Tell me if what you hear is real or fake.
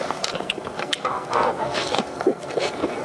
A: fake